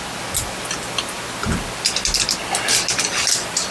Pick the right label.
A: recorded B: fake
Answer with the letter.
A